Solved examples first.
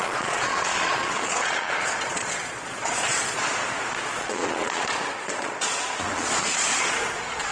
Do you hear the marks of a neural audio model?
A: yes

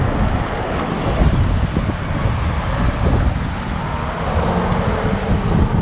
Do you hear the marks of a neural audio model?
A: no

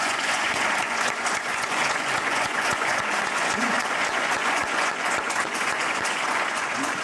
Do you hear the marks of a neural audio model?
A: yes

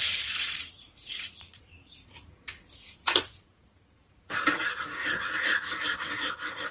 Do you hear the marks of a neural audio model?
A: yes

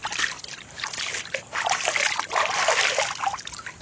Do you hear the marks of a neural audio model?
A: no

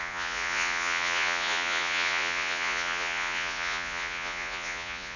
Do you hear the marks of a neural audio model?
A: yes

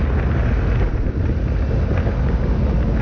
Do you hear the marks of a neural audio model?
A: no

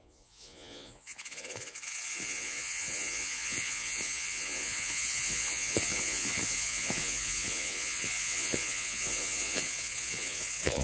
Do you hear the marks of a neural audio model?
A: yes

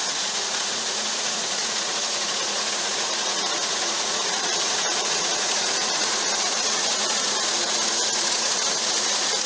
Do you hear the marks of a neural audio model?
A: yes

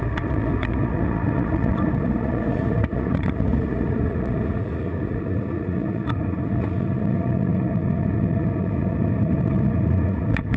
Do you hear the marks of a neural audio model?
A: yes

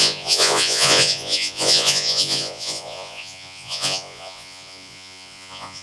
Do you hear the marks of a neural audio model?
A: yes